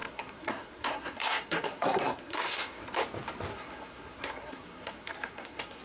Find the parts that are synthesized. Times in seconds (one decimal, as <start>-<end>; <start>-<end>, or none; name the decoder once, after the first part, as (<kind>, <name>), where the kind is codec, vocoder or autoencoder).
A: 0.0-2.9 (codec, SNAC); 3.5-5.8